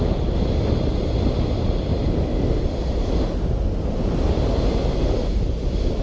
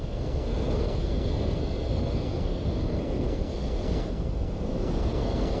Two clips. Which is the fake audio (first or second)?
second